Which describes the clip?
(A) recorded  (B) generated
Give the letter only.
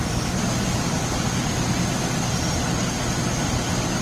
A